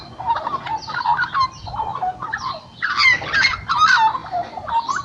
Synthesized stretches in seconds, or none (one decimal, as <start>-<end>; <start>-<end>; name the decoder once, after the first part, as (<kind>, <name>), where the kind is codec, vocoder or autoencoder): none